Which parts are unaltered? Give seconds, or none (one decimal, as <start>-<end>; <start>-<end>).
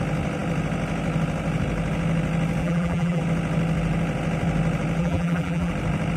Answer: 0.0-2.6; 3.2-5.0; 5.7-6.2